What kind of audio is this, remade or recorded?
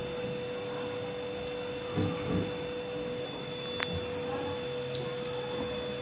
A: recorded